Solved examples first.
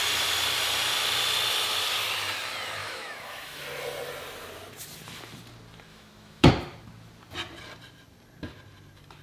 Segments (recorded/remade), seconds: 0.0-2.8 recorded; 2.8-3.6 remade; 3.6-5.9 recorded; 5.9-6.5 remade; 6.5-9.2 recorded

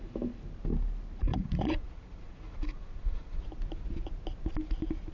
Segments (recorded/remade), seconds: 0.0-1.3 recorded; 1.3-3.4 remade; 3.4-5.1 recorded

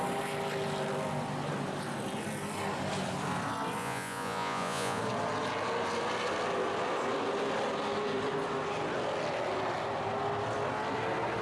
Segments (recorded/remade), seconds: 0.0-3.8 recorded; 3.8-5.0 remade; 5.0-11.4 recorded

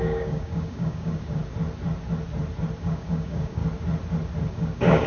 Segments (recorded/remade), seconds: 0.0-1.4 remade; 1.4-2.8 recorded; 2.8-3.6 remade; 3.6-4.5 recorded; 4.5-5.1 remade